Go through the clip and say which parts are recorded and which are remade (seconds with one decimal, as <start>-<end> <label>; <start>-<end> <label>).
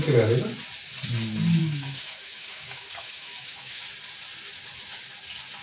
0.0-1.6 recorded; 1.6-3.8 remade; 3.8-5.6 recorded